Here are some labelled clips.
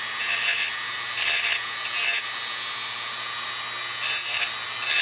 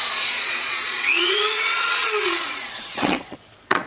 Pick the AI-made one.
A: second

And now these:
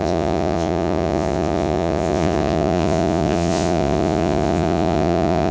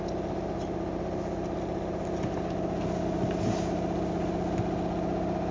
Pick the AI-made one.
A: first